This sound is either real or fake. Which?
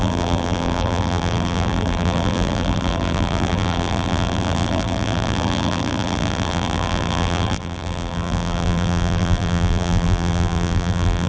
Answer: fake